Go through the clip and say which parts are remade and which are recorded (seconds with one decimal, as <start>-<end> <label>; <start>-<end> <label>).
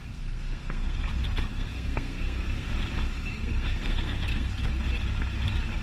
0.0-1.0 remade; 1.0-1.5 recorded; 1.5-2.7 remade; 2.7-3.4 recorded; 3.4-4.5 remade; 4.5-5.8 recorded